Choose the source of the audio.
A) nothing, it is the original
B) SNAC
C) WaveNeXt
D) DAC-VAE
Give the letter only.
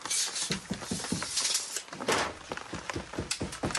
A